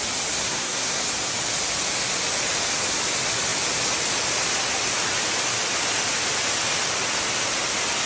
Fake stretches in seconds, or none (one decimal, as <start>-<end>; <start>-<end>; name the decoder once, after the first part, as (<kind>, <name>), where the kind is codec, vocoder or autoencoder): 0.4-1.0 (codec, SNAC)